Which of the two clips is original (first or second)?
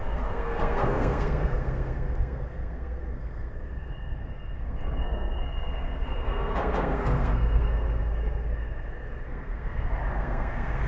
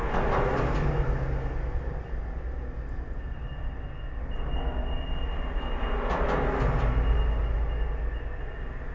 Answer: second